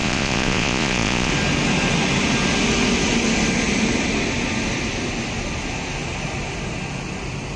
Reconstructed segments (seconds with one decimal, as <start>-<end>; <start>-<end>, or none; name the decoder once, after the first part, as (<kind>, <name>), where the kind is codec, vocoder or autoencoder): 0.0-1.3 (vocoder, Vocos)